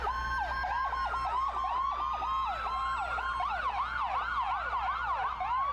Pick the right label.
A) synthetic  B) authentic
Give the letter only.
B